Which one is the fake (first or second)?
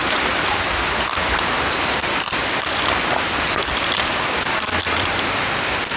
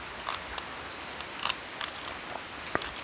first